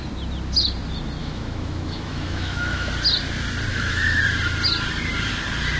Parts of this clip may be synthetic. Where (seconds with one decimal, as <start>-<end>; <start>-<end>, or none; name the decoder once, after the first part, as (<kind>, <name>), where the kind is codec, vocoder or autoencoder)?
1.2-2.9 (autoencoder, DAC-VAE); 3.7-4.2